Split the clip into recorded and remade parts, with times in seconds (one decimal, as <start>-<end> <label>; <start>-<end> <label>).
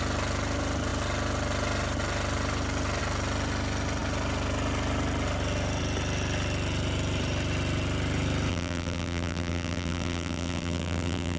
0.0-8.5 recorded; 8.5-11.4 remade